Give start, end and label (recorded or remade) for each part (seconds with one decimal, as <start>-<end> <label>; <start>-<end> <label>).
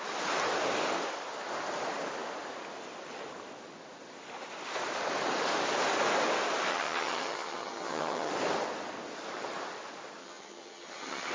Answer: 0.0-6.7 recorded; 6.7-8.3 remade; 8.3-10.2 recorded; 10.2-11.3 remade